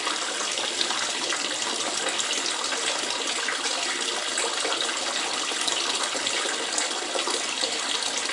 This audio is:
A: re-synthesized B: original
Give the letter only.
B